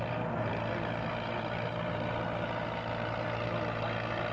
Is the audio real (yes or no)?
yes